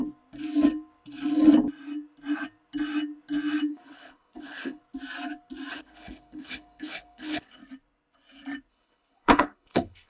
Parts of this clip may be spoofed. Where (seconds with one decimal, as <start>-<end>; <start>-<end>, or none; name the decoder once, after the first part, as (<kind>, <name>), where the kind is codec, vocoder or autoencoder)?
3.7-4.8 (codec, HILCodec); 5.7-7.6; 8.7-10.1